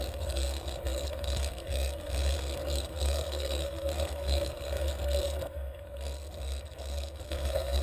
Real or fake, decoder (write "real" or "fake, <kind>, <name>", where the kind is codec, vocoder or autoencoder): fake, codec, SNAC